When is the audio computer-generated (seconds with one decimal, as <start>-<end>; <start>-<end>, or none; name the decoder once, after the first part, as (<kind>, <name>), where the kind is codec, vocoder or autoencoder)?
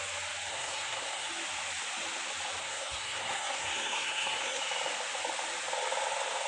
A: 0.5-1.3 (codec, SNAC); 2.6-4.6